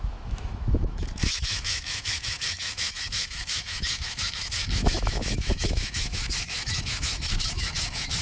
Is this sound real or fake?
fake